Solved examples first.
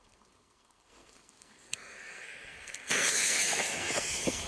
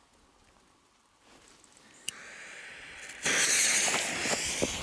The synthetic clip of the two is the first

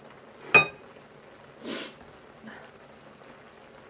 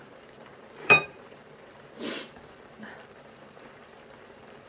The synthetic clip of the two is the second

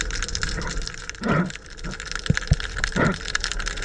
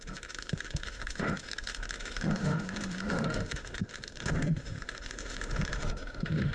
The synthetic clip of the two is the second